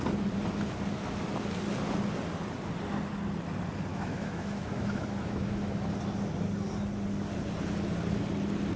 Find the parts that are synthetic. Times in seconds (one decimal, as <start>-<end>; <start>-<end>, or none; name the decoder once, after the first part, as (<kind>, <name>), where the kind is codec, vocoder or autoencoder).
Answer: 3.9-5.9 (autoencoder, DAC-VAE)

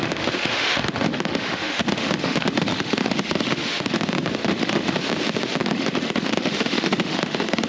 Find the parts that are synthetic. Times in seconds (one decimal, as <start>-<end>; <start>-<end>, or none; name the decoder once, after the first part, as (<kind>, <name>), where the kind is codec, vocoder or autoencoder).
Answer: 0.0-4.0 (autoencoder, DAC-VAE); 4.4-5.0; 5.6-7.7

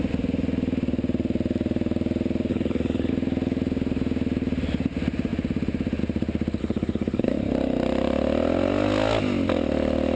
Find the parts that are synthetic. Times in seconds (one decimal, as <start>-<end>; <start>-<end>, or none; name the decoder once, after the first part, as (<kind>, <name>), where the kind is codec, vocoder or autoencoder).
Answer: 2.5-3.1 (autoencoder, DAC-VAE); 6.6-7.4

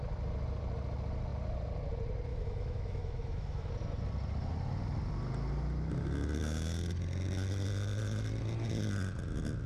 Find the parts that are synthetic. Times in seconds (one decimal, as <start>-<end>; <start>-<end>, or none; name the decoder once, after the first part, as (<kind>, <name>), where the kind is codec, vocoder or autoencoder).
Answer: 2.3-3.7 (autoencoder, DAC-VAE)